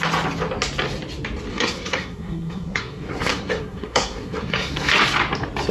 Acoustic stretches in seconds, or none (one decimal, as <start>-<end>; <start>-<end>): 0.0-1.5; 4.9-5.7